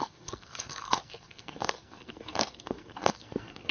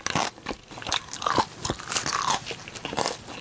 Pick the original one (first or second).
second